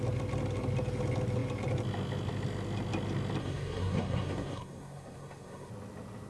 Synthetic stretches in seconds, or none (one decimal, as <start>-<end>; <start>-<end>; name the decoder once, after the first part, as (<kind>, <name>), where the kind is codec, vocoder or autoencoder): 3.4-5.7 (codec, SNAC)